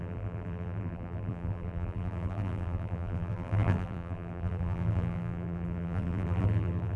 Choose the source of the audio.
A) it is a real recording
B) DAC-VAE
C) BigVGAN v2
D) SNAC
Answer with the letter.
C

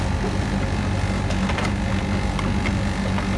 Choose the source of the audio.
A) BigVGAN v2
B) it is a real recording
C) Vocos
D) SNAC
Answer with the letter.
B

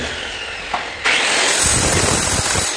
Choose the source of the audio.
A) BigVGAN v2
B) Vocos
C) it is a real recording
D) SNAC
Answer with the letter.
C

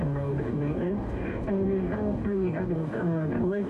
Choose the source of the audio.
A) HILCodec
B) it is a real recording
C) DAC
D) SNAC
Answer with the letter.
C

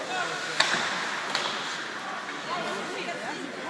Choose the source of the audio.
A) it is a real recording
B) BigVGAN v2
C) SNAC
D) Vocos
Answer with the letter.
A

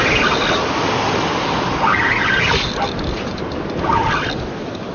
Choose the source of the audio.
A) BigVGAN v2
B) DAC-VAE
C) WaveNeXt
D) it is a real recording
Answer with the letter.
D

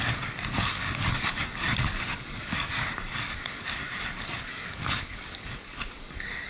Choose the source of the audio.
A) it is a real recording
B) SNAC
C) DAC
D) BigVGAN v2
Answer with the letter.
C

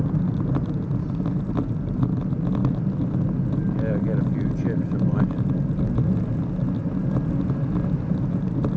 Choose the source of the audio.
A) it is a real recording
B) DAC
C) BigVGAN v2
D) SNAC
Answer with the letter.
A